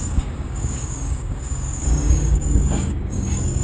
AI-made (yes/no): yes